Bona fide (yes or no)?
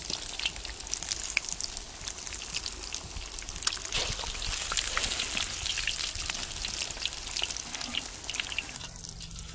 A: yes